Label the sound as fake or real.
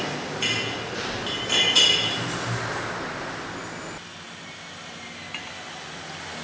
real